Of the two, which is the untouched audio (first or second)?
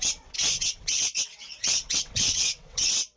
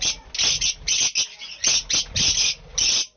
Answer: second